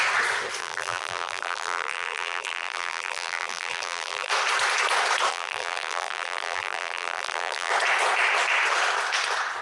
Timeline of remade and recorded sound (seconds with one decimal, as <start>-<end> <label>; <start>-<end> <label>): 0.0-0.6 recorded; 0.6-4.3 remade; 4.3-5.3 recorded; 5.3-7.7 remade; 7.7-9.6 recorded